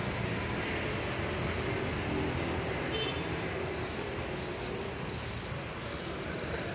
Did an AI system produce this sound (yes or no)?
no